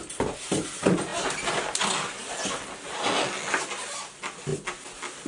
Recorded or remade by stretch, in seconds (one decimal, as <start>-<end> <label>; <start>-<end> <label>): 0.0-5.3 recorded